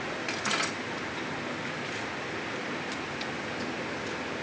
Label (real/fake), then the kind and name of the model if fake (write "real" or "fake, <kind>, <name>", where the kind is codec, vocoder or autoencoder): real